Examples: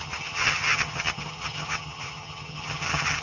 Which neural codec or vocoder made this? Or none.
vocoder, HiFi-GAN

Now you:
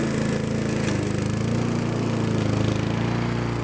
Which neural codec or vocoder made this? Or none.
none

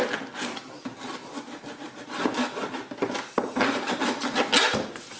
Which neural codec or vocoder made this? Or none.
none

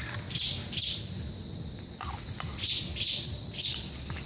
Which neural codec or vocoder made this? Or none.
none